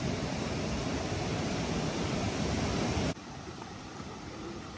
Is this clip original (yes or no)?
yes